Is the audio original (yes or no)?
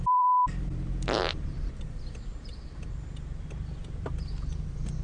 no